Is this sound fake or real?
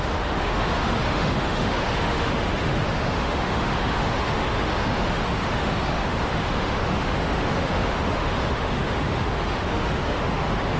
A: fake